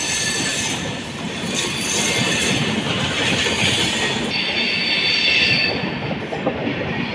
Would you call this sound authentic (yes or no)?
yes